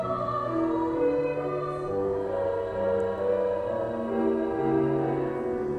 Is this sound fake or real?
real